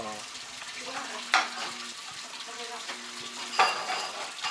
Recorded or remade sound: recorded